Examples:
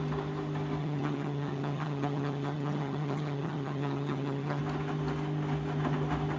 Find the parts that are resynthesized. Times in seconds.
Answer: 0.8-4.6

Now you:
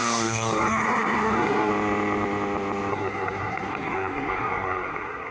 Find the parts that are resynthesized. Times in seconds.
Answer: 0.0-1.7; 2.9-5.3

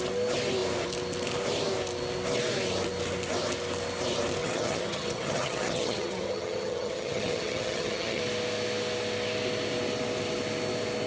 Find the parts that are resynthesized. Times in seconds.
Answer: 4.4-8.2

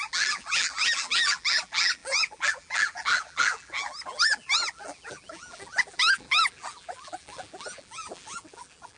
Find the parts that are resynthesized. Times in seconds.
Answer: 0.0-9.0

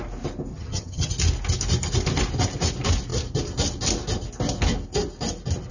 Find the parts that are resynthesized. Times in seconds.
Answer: 0.5-1.1